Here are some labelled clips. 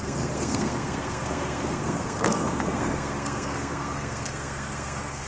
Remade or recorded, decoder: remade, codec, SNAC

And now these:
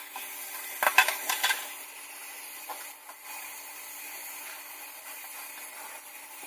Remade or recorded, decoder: recorded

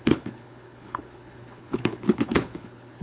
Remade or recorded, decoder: remade, codec, HILCodec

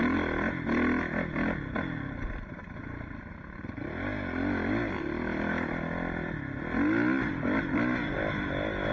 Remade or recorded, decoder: recorded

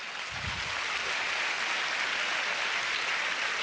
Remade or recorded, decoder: recorded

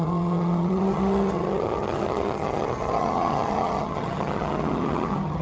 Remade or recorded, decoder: remade, vocoder, HiFi-GAN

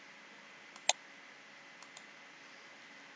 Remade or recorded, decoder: recorded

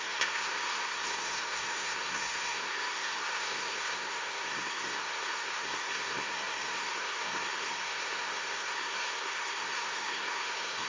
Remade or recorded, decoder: remade, codec, SNAC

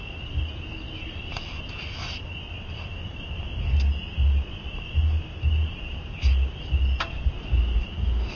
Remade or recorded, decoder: recorded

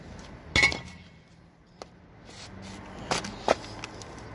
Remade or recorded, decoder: recorded